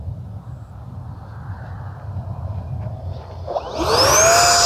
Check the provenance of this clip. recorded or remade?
recorded